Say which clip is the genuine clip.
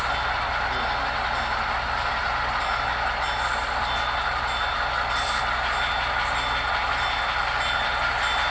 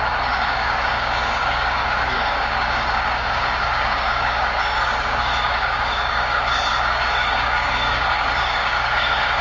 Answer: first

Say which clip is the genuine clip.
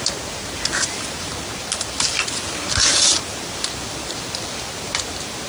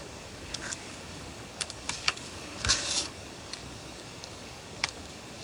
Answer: first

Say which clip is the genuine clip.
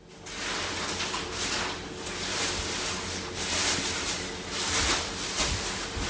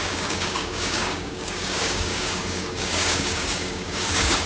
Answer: first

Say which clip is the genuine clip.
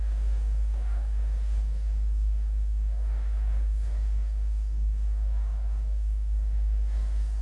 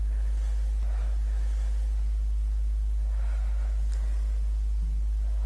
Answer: second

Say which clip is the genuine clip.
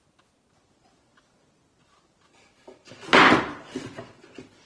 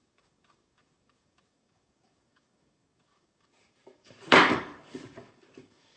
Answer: first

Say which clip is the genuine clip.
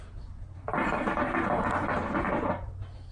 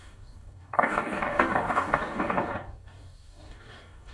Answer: first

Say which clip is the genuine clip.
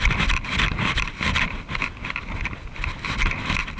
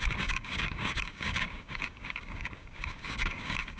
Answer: first